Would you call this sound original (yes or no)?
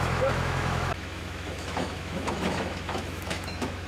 no